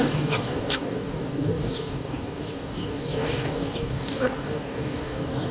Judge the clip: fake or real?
fake